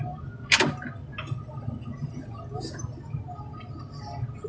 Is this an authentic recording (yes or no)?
yes